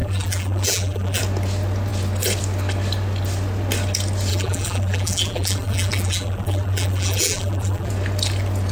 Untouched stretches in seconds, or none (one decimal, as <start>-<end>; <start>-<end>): 1.2-4.3; 7.9-8.7